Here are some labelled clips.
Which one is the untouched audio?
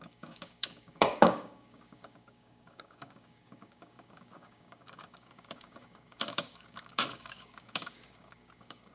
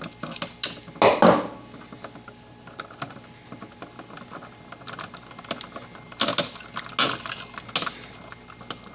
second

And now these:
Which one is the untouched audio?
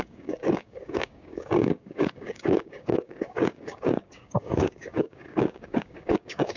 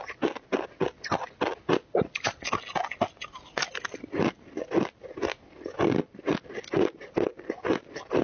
second